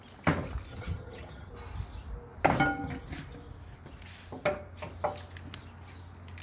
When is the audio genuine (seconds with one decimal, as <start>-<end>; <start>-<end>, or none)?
0.0-0.7; 1.5-6.4